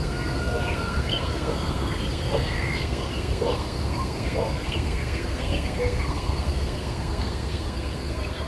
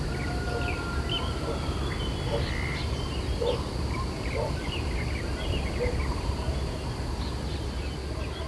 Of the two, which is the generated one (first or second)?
first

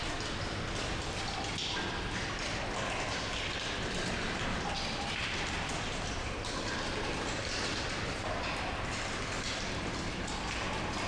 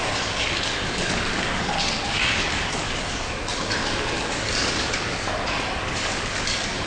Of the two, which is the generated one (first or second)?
second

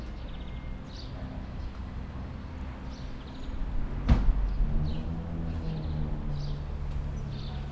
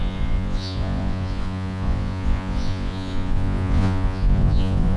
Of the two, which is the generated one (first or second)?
second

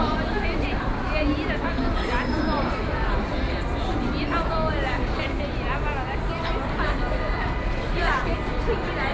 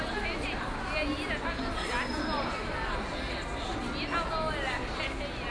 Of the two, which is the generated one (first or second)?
first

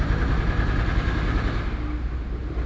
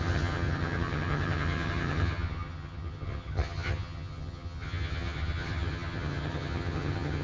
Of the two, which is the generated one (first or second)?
second